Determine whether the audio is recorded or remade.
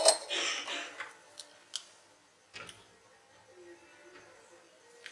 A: recorded